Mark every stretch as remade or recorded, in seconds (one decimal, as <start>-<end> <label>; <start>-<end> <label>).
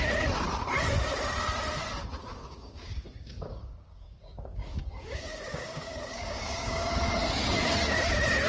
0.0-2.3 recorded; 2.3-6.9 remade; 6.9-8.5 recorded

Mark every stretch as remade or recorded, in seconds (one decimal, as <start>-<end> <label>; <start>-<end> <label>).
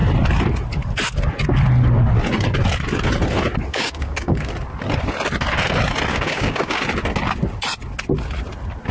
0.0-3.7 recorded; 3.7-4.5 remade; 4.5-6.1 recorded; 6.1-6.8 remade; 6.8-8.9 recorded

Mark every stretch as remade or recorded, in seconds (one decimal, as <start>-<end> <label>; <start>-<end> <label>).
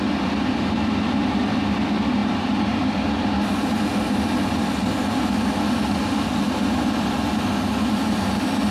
0.0-8.7 recorded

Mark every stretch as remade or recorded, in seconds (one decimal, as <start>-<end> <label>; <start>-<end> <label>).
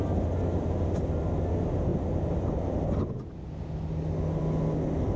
0.0-5.2 recorded